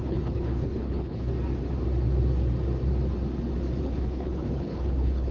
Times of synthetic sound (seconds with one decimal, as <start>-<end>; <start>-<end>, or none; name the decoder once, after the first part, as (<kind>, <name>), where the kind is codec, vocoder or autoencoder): 0.0-1.3 (codec, HILCodec); 3.8-5.3